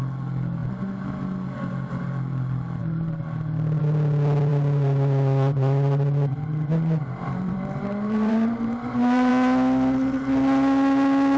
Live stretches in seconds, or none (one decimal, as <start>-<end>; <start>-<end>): 0.0-4.5; 9.3-11.4